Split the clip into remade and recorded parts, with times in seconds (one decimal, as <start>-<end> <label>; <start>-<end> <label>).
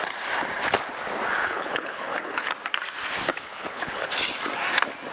0.0-1.4 recorded; 1.4-2.5 remade; 2.5-3.3 recorded; 3.3-4.0 remade; 4.0-5.1 recorded